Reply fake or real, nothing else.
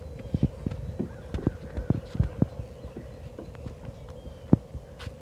real